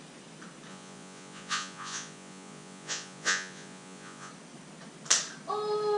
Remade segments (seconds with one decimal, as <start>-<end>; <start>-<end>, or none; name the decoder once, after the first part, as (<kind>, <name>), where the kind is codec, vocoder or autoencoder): 0.7-4.3 (vocoder, Vocos)